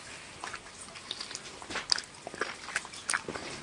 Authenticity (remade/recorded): recorded